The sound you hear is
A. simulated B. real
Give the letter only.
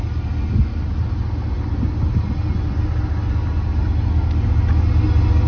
B